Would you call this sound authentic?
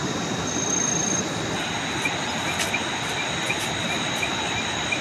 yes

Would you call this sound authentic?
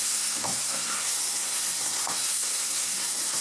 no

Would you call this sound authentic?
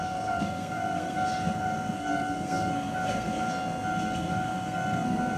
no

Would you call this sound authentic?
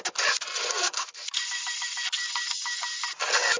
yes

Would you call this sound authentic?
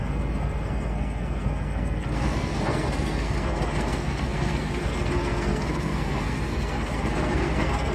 no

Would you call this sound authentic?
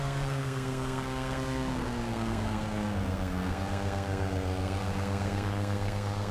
no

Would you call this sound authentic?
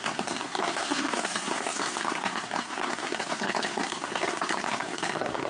no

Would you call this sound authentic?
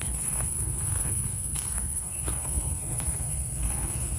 no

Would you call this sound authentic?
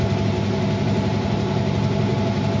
yes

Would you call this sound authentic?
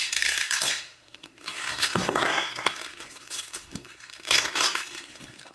no